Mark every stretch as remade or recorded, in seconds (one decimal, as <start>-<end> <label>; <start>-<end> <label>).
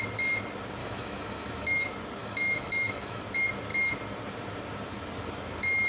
0.0-0.8 recorded; 0.8-1.8 remade; 1.8-2.2 recorded; 2.2-3.2 remade; 3.2-5.9 recorded